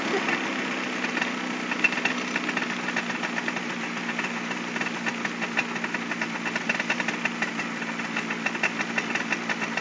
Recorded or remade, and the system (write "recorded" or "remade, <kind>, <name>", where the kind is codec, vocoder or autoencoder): recorded